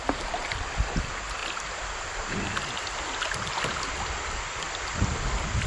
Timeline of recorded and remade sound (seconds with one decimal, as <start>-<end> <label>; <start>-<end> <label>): 0.0-5.7 recorded